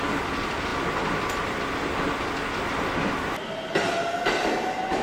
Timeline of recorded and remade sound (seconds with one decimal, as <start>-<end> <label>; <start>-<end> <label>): 0.0-5.0 recorded